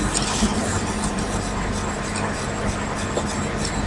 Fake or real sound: real